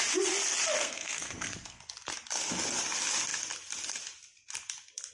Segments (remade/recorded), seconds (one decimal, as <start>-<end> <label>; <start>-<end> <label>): 0.0-0.8 recorded; 0.8-1.8 remade; 1.8-5.1 recorded